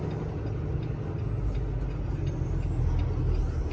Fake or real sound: real